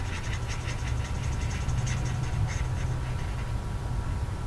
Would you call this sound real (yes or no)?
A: yes